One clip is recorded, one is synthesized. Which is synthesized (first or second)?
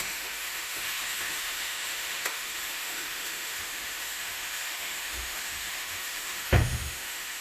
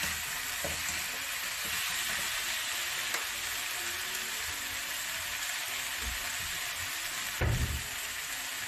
first